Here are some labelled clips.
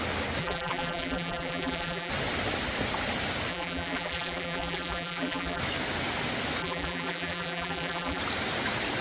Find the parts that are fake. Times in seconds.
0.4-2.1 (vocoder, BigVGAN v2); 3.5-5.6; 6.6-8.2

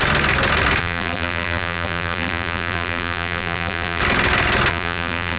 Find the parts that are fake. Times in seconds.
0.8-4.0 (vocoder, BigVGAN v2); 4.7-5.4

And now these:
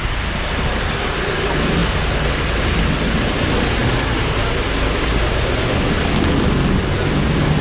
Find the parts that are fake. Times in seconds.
none

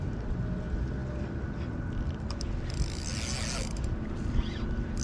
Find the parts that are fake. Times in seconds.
none